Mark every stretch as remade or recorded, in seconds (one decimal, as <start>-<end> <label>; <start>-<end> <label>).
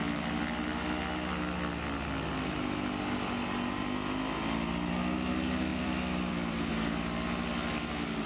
0.0-5.7 recorded; 5.7-6.7 remade; 6.7-8.3 recorded